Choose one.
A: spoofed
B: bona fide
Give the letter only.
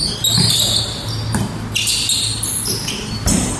B